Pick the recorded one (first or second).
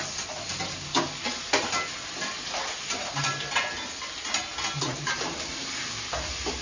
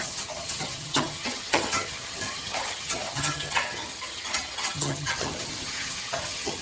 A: first